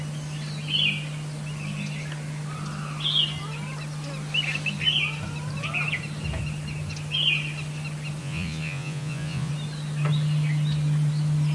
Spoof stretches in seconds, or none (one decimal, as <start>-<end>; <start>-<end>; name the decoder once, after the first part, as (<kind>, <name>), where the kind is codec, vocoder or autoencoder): 8.2-9.5 (vocoder, Vocos)